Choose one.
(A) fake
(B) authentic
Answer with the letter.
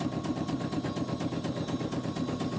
B